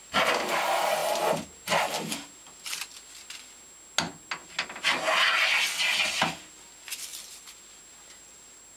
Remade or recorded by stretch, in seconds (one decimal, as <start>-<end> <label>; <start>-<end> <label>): 0.0-8.8 recorded

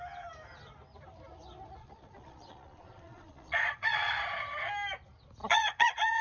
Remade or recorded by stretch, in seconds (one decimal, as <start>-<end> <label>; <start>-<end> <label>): 0.0-1.8 recorded; 1.8-4.1 remade; 4.1-5.4 recorded; 5.4-6.2 remade

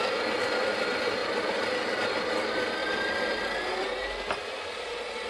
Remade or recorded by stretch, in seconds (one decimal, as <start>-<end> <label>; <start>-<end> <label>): 0.0-5.3 recorded

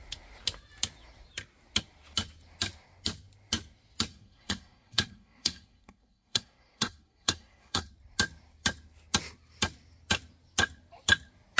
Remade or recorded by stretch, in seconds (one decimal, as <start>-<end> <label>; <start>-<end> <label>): 0.0-4.1 recorded; 4.1-7.9 remade; 7.9-11.6 recorded

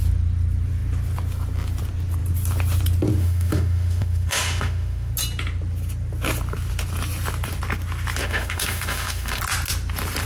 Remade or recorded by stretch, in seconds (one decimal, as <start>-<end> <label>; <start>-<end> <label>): 0.0-3.2 recorded; 3.2-5.1 remade; 5.1-8.2 recorded; 8.2-9.4 remade; 9.4-10.3 recorded